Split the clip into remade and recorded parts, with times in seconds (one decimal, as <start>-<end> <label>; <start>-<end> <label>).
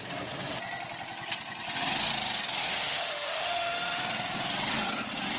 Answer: 0.0-2.6 recorded; 2.6-4.0 remade; 4.0-5.4 recorded